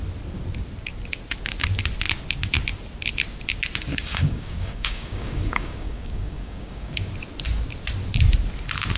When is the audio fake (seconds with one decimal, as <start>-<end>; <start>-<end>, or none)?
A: 3.9-7.1